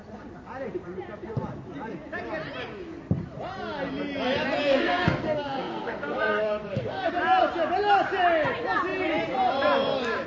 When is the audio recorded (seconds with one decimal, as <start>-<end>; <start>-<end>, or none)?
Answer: 0.0-4.6; 7.1-10.3